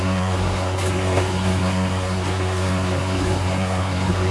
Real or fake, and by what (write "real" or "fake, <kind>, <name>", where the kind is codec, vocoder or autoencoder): fake, codec, SNAC